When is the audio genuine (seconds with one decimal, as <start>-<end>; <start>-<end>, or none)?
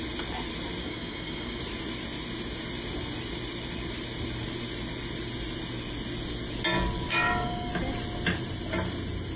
0.0-0.8; 1.6-7.1; 7.7-9.4